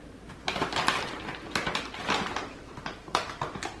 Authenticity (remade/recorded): recorded